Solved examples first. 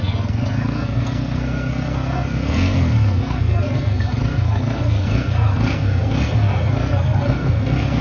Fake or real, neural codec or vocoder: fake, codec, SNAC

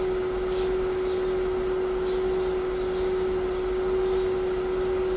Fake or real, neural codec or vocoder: real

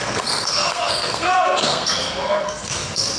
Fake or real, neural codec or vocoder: fake, codec, SNAC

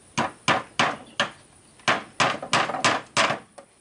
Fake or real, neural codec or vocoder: real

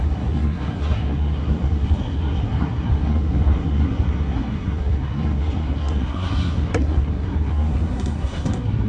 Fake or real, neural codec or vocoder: fake, codec, SNAC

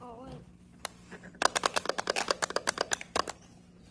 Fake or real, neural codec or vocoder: real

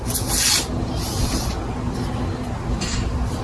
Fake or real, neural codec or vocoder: real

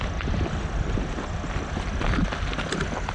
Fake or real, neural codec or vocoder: real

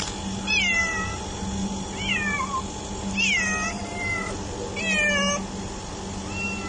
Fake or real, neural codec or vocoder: real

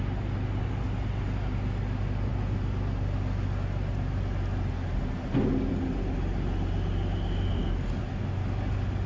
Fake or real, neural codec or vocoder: real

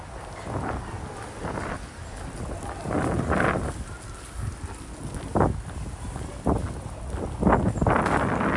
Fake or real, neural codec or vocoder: real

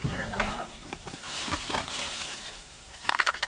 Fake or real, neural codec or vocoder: fake, codec, SNAC